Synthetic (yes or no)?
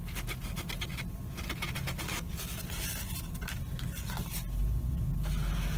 no